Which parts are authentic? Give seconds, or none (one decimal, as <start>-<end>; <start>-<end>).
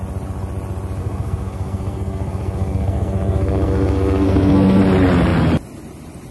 0.0-1.0; 4.8-6.3